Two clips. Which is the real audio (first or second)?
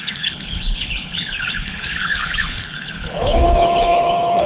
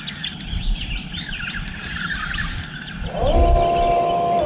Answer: second